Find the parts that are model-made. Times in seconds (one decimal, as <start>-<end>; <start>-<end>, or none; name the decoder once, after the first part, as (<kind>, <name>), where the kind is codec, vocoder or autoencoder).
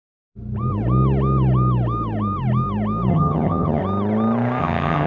3.1-3.8 (vocoder, HiFi-GAN); 4.6-5.1